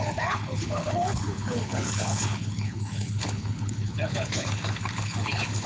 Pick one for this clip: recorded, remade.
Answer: remade